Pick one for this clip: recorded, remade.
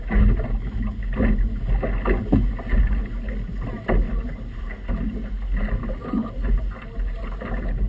recorded